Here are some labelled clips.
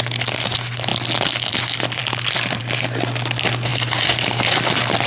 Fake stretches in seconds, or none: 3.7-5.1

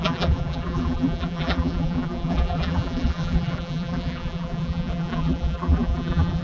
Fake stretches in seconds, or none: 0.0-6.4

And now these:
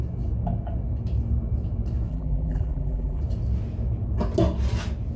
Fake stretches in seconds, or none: 2.1-3.2

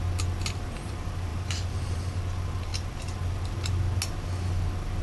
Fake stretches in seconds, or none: 1.3-2.2

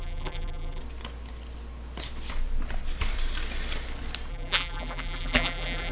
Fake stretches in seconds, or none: 0.0-0.8; 4.3-5.9